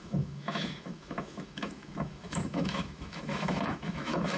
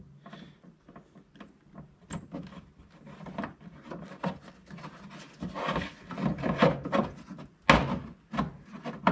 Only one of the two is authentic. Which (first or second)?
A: second